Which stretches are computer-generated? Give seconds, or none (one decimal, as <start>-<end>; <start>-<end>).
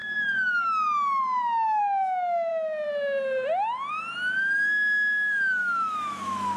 5.6-6.6